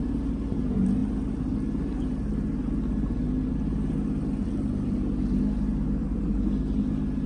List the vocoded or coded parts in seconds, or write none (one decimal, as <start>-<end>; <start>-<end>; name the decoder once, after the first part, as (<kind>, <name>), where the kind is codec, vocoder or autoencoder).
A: none